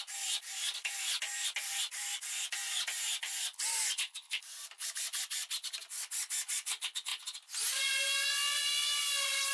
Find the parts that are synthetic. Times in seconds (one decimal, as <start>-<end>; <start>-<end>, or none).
none